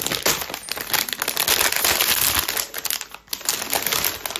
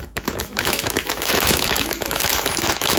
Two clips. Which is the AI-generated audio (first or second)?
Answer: second